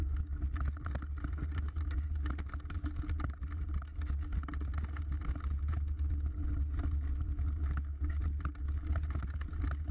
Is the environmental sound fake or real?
real